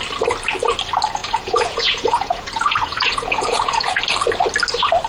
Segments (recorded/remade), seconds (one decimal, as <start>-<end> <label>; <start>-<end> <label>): 0.0-1.2 recorded; 1.2-4.0 remade; 4.0-5.1 recorded